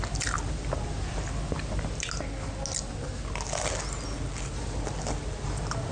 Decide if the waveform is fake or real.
real